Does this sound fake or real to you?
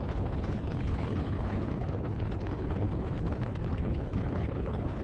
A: fake